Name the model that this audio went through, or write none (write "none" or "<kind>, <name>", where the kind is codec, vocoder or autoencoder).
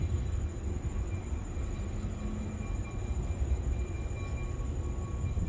none